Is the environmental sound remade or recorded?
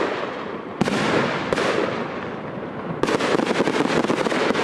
recorded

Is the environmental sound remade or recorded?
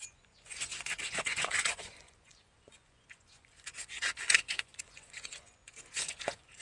remade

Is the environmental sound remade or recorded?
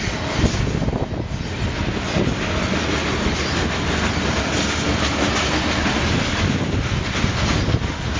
recorded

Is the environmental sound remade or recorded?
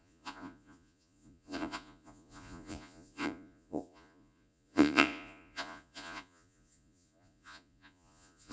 remade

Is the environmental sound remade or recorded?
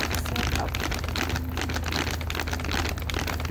recorded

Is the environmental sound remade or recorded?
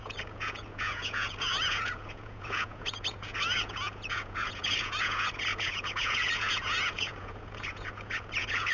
remade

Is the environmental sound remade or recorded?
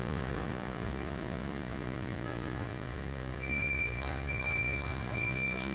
remade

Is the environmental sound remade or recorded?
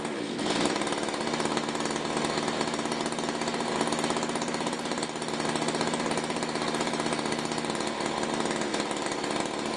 recorded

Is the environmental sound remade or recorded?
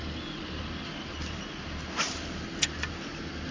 recorded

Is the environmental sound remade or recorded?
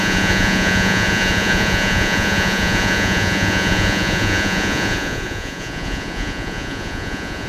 remade